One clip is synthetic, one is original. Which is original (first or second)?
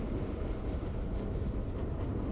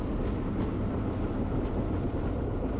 second